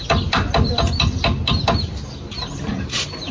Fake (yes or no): no